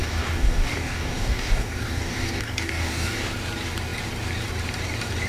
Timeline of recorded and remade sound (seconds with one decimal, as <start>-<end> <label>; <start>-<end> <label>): 0.0-3.2 remade; 3.2-5.3 recorded